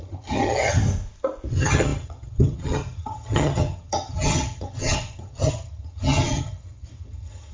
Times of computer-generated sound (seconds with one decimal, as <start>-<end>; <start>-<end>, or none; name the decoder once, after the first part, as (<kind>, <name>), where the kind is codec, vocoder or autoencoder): 0.0-0.8 (vocoder, HiFi-GAN); 1.5-7.5